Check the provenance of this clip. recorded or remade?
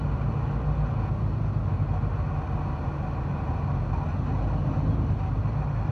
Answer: recorded